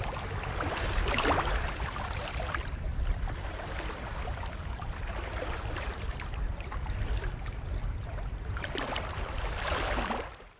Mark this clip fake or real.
fake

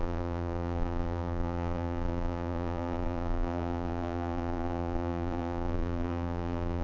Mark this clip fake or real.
fake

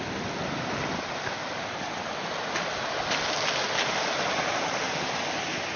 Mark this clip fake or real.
real